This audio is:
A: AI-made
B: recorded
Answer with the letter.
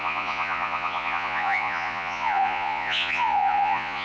A